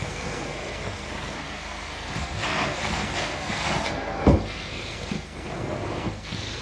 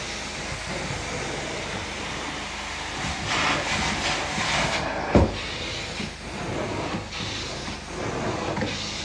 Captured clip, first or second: second